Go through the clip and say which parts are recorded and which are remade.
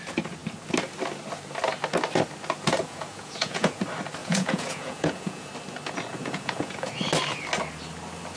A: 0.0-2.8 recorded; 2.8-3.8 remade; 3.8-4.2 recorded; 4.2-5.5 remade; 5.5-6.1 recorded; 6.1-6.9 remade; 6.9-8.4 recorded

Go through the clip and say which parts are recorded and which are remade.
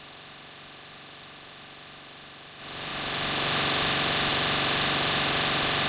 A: 0.0-5.9 recorded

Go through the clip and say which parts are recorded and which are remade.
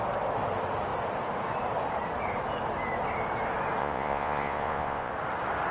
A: 0.0-3.8 recorded; 3.8-5.1 remade; 5.1-5.7 recorded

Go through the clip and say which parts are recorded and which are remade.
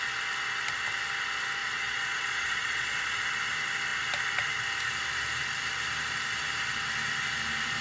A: 0.0-1.6 recorded; 1.6-3.2 remade; 3.2-7.8 recorded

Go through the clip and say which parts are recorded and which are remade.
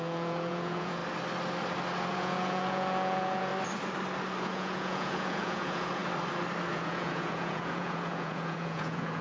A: 0.0-1.0 remade; 1.0-2.1 recorded; 2.1-3.5 remade; 3.5-4.4 recorded; 4.4-6.0 remade; 6.0-6.7 recorded; 6.7-9.2 remade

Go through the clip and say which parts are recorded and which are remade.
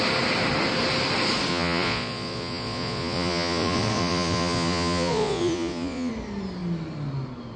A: 0.0-1.5 recorded; 1.5-6.1 remade; 6.1-7.6 recorded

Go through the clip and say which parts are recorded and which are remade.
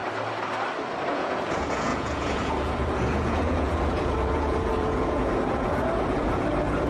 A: 0.0-1.1 recorded; 1.1-6.9 remade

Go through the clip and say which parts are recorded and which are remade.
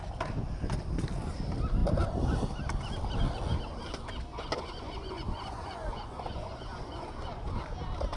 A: 0.0-4.3 recorded; 4.3-7.6 remade; 7.6-8.2 recorded